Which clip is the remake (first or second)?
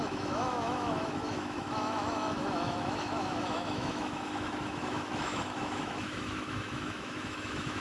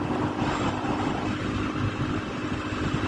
first